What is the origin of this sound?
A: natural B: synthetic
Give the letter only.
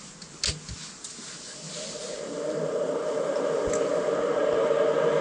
A